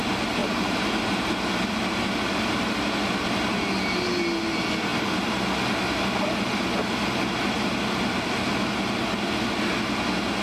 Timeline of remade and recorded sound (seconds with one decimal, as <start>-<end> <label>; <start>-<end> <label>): 0.0-0.4 recorded; 0.4-1.3 remade; 1.3-10.4 recorded